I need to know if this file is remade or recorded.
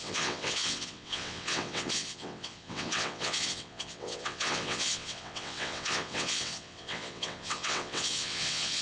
remade